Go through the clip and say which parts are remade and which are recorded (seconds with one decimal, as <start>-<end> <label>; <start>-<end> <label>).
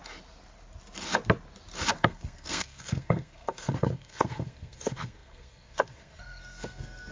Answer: 0.0-1.9 recorded; 1.9-7.1 remade